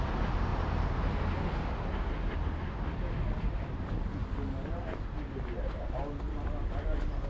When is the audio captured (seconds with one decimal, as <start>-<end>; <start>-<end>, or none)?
0.0-7.3